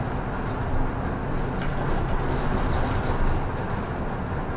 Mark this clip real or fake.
real